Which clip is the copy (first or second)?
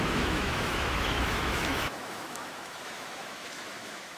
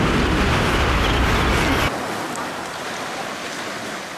first